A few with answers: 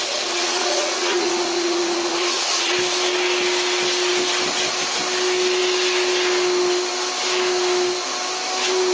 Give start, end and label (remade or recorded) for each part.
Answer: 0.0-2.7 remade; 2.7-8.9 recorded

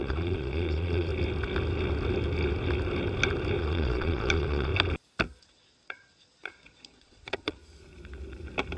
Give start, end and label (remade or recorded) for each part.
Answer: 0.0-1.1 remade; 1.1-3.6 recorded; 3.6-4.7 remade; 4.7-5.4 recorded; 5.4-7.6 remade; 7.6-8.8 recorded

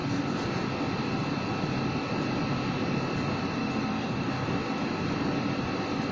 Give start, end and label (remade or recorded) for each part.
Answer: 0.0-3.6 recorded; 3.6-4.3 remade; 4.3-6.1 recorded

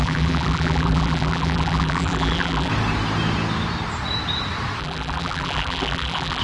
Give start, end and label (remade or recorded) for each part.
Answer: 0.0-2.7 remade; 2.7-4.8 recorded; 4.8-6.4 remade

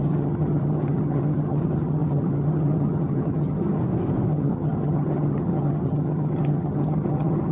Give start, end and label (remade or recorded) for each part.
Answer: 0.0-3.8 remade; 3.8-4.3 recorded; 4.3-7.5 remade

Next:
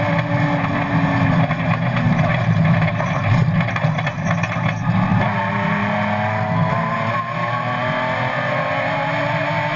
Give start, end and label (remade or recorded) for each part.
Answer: 0.0-9.8 recorded